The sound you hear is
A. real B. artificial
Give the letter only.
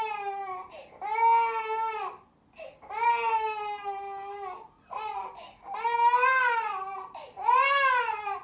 A